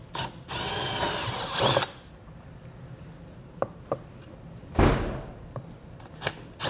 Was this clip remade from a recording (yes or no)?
no